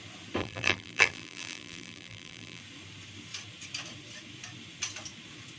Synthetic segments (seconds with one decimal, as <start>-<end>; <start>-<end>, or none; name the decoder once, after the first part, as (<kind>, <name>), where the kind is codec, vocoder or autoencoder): 0.4-2.6 (vocoder, BigVGAN v2)